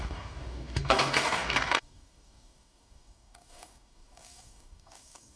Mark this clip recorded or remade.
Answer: remade